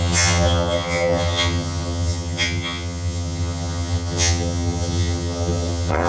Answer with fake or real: fake